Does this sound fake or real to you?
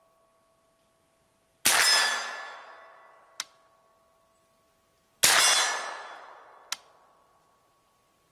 real